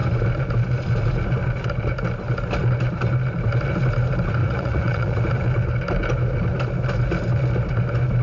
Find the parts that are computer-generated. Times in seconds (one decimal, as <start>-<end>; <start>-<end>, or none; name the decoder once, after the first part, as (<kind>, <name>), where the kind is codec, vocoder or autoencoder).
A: 4.4-5.2 (vocoder, Vocos)